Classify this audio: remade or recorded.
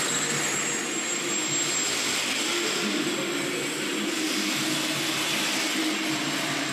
recorded